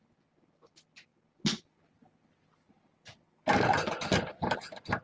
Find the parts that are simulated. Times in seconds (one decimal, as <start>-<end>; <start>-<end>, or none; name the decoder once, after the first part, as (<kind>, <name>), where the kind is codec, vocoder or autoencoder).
none